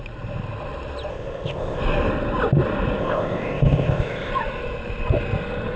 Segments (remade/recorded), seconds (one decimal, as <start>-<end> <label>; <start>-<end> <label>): 0.0-1.1 recorded; 1.1-1.8 remade; 1.8-3.0 recorded; 3.0-4.3 remade; 4.3-5.8 recorded